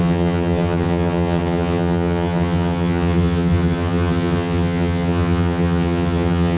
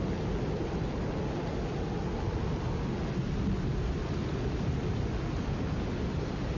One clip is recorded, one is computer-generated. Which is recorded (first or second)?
second